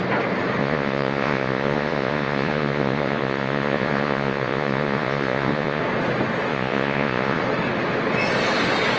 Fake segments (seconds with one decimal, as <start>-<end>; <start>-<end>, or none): 0.6-5.8; 6.5-7.4